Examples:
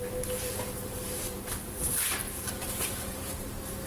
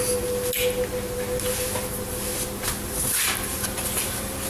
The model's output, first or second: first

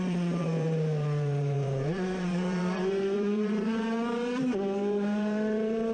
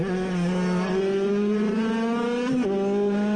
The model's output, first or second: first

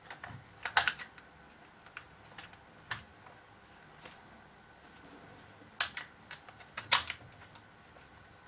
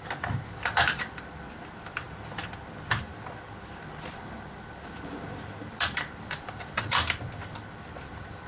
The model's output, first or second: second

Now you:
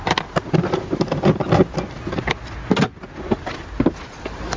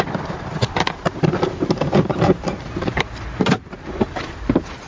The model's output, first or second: second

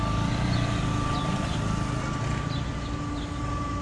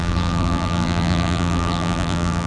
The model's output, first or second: second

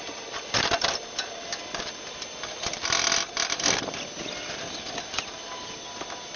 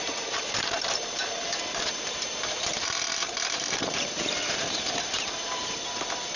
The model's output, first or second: second